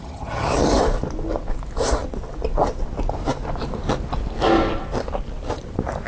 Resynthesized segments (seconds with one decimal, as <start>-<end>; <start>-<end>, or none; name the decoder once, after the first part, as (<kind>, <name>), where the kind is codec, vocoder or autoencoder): 0.0-0.7 (vocoder, HiFi-GAN)